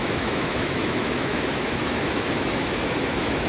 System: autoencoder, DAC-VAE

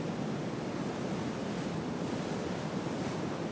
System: none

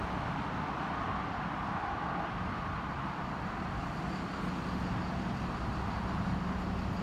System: none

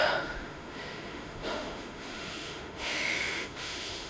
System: autoencoder, DAC-VAE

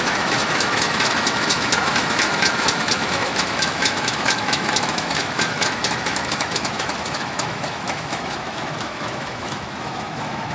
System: autoencoder, DAC-VAE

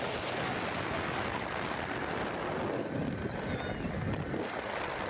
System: none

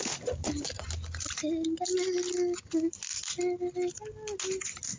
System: none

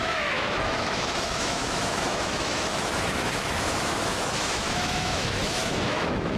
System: autoencoder, DAC-VAE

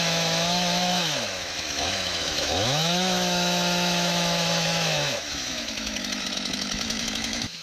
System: autoencoder, DAC-VAE